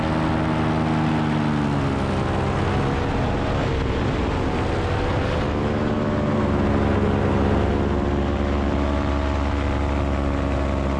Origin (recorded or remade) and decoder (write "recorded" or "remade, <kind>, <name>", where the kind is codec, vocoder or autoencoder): recorded